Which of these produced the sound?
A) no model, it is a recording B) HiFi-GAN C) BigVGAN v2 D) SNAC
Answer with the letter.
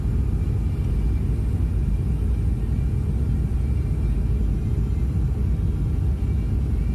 A